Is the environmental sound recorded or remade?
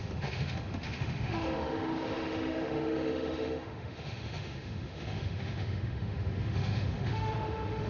remade